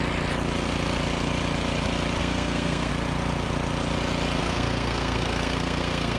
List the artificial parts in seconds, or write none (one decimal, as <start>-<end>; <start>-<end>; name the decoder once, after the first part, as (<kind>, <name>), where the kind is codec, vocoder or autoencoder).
2.2-2.9 (codec, SNAC); 4.4-6.2

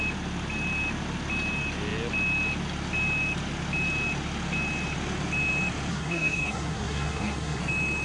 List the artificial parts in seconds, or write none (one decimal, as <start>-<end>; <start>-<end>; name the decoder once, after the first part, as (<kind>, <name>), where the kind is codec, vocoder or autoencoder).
5.9-7.6 (codec, SNAC)

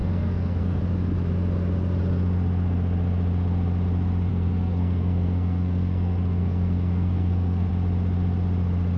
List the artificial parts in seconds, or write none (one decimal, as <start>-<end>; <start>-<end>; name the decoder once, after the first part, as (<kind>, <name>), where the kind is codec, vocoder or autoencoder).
0.0-0.8 (codec, SNAC); 4.3-7.7

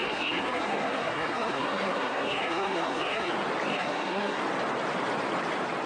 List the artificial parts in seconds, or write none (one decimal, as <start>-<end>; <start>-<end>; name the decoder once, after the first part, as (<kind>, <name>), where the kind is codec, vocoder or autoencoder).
0.0-3.3 (codec, SNAC); 3.7-4.4

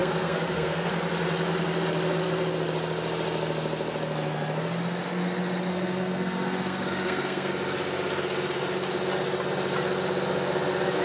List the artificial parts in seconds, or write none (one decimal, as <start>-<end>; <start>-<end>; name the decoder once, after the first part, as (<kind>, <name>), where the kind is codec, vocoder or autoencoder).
0.0-0.9 (codec, SNAC); 5.7-7.5

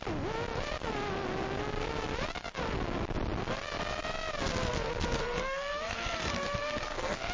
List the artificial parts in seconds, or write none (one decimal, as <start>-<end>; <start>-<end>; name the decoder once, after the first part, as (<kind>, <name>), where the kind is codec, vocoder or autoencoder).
5.2-7.3 (codec, SNAC)